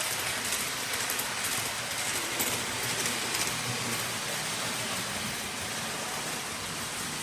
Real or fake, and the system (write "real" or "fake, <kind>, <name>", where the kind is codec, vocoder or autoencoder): real